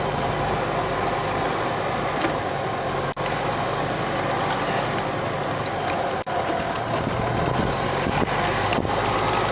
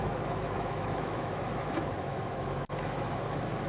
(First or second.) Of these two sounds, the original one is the first